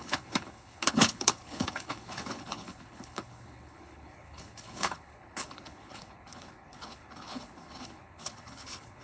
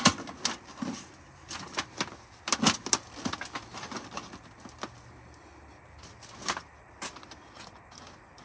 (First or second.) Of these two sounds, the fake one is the first